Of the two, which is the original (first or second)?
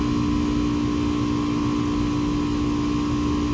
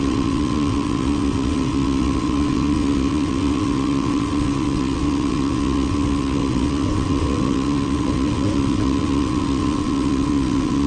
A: first